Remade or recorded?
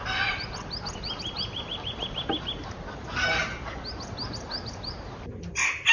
recorded